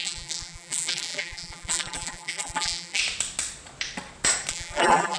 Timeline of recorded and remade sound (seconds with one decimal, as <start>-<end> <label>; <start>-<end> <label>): 0.0-3.0 remade; 3.0-4.5 recorded; 4.5-5.2 remade